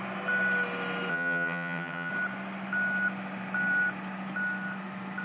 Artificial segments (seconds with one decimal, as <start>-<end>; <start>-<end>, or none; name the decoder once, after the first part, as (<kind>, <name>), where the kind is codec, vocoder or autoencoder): 1.1-2.1 (vocoder, HiFi-GAN)